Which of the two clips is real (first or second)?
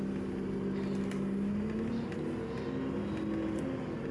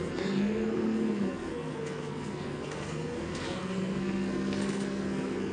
first